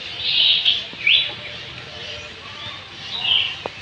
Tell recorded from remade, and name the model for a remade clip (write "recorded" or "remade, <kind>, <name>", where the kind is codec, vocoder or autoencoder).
recorded